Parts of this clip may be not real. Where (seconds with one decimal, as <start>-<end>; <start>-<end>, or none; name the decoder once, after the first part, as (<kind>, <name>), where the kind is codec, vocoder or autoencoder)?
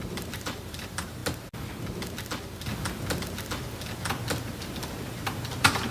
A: 0.0-1.2 (vocoder, BigVGAN v2); 4.7-5.9